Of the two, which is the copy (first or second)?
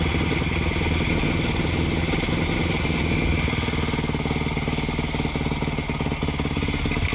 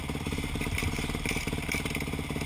second